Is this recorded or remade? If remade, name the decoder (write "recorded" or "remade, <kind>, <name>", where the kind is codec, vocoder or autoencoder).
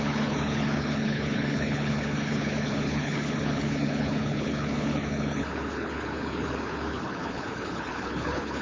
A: remade, codec, HILCodec